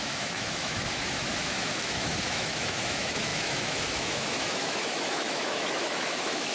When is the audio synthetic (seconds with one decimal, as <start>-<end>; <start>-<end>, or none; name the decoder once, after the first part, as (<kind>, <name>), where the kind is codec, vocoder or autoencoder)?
0.0-6.5 (autoencoder, DAC-VAE)